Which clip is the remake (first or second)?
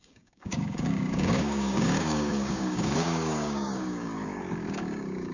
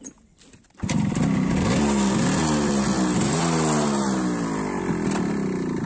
first